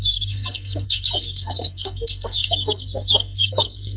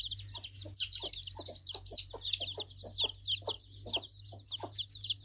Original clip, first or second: second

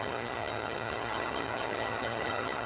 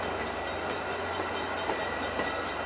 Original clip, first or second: second